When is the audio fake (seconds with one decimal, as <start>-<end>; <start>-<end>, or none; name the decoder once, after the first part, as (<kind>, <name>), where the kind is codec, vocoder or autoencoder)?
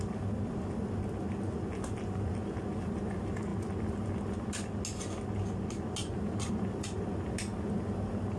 none